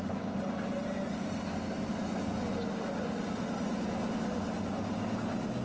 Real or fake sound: real